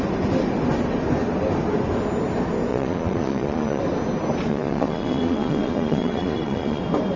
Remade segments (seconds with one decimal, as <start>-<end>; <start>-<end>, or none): 2.7-3.8; 4.5-6.8